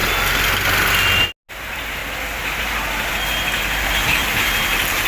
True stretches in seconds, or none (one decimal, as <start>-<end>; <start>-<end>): 0.0-1.5; 2.0-3.1